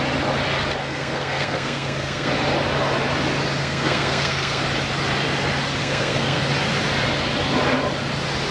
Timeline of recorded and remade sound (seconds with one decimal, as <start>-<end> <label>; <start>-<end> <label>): 0.0-0.8 recorded; 0.8-2.3 remade; 2.3-3.6 recorded; 3.6-4.6 remade; 4.6-5.8 recorded; 5.8-6.4 remade; 6.4-8.5 recorded